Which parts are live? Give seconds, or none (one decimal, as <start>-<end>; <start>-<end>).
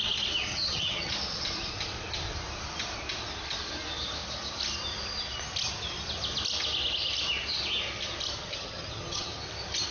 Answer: 0.0-0.5; 1.1-8.4; 9.3-9.9